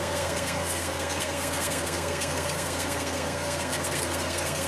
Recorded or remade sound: remade